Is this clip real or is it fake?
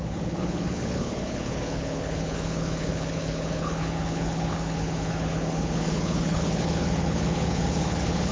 fake